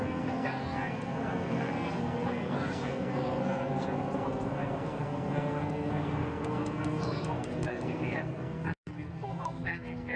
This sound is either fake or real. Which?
fake